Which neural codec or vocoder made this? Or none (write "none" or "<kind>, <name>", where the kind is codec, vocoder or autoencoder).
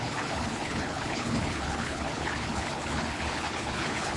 codec, HILCodec